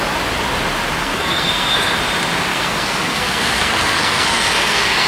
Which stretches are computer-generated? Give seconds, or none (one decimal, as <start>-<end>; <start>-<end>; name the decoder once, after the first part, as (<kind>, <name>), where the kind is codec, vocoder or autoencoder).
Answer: 1.0-2.0 (codec, SNAC); 2.5-5.1